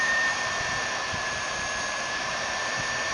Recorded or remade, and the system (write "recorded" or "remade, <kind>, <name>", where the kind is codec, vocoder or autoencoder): remade, vocoder, BigVGAN v2